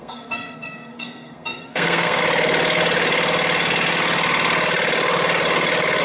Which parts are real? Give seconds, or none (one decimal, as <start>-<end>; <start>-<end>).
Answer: 2.2-6.0